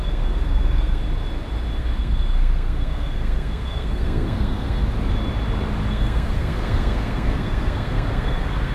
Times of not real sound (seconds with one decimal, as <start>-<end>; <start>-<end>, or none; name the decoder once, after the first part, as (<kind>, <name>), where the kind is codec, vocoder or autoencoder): 0.0-1.0 (codec, SNAC); 1.8-4.8; 5.9-8.7